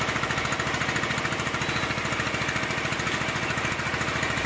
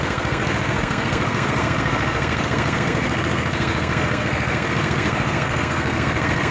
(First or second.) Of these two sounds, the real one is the first